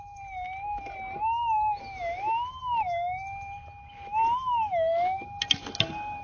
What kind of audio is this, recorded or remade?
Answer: recorded